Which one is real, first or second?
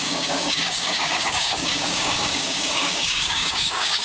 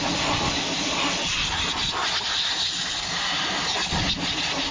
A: second